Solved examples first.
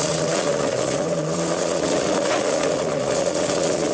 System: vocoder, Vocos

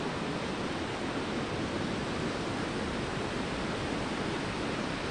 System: none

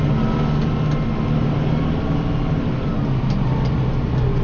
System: none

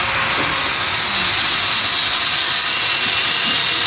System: none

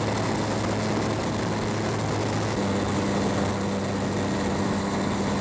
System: none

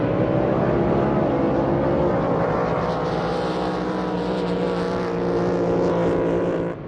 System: none